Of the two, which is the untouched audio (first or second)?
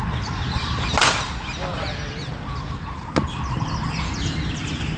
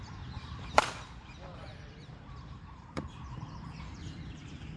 first